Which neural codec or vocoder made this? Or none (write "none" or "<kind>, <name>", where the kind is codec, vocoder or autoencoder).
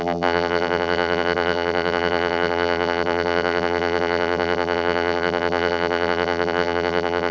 vocoder, BigVGAN v2